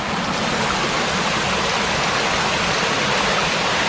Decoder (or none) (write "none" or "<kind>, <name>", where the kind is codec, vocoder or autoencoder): none